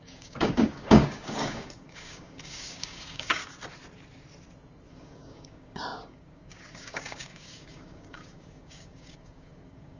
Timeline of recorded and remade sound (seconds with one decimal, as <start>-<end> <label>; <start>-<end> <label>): 0.0-3.4 remade; 3.4-4.9 recorded; 4.9-10.0 remade